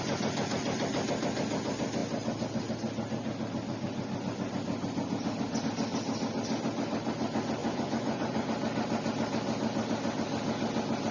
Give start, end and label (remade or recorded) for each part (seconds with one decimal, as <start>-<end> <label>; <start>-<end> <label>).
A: 0.0-7.6 recorded; 7.6-8.5 remade; 8.5-11.1 recorded